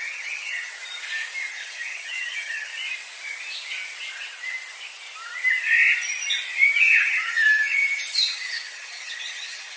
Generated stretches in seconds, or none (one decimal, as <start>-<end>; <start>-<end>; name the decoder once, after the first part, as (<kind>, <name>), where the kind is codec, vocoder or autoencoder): 0.0-0.7 (vocoder, HiFi-GAN); 1.5-2.7; 6.8-9.8